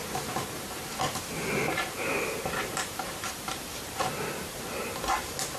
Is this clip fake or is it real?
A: fake